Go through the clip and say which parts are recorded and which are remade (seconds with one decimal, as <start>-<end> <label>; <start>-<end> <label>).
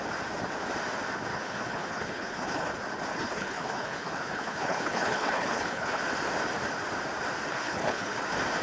0.0-1.3 recorded; 1.3-2.7 remade; 2.7-3.1 recorded; 3.1-6.0 remade; 6.0-7.5 recorded; 7.5-8.2 remade; 8.2-8.6 recorded